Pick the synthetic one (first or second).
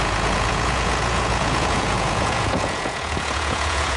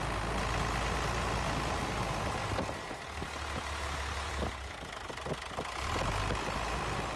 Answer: first